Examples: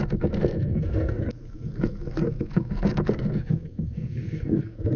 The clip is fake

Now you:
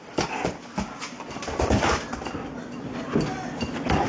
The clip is real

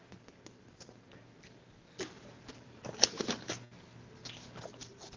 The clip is real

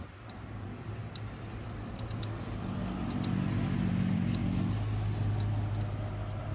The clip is fake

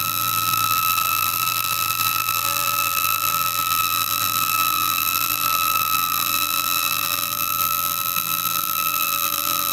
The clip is fake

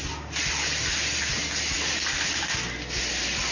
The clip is real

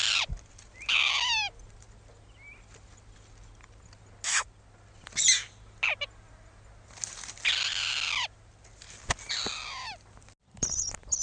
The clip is real